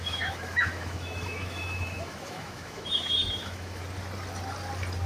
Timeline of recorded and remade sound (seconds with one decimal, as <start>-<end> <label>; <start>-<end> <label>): 0.0-3.8 remade; 3.8-5.1 recorded